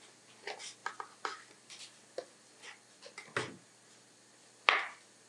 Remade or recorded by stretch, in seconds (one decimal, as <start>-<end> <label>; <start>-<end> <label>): 0.0-5.3 recorded